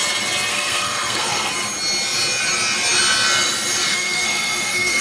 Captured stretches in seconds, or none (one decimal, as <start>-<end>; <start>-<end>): 0.0-0.5; 1.5-3.9